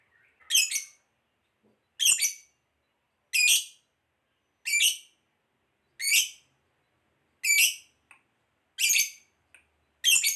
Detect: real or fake real